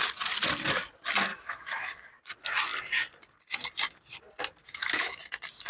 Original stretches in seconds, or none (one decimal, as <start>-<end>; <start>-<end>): 0.0-1.3; 2.2-4.6; 5.2-5.7